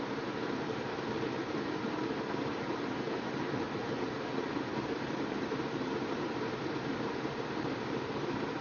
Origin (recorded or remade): remade